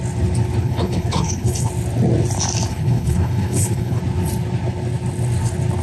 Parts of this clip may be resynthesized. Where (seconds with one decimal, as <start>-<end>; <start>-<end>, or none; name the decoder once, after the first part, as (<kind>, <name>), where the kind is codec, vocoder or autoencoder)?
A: 0.6-1.7 (codec, HILCodec); 2.7-4.0